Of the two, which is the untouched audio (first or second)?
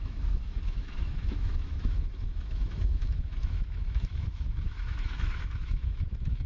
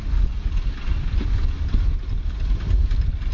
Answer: second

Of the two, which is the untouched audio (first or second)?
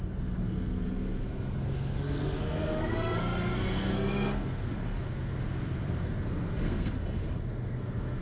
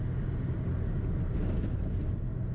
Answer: second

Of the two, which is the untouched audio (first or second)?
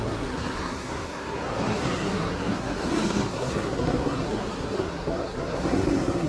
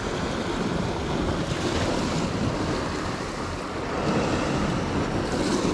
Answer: second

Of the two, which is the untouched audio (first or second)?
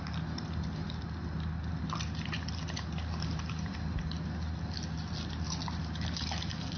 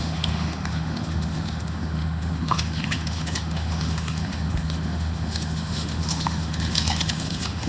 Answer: first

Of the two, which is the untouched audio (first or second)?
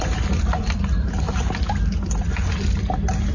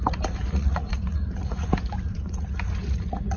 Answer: first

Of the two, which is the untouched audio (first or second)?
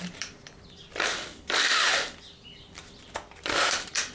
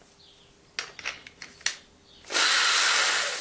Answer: second